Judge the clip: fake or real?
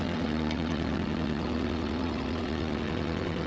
fake